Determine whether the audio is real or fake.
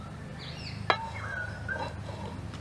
real